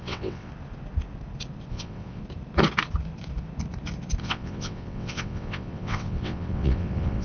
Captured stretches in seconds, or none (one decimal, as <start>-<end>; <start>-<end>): 0.5-1.7; 2.2-4.2